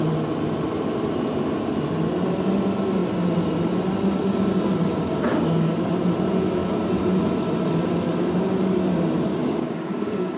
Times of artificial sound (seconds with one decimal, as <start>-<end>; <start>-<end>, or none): 5.3-5.9; 9.3-10.4